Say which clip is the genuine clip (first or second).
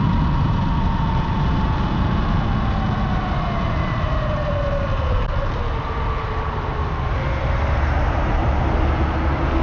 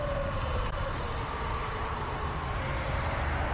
first